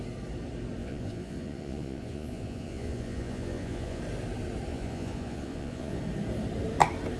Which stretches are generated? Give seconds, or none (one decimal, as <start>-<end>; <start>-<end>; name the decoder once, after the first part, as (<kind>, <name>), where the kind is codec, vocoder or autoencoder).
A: 0.8-4.0 (vocoder, Vocos); 4.7-6.0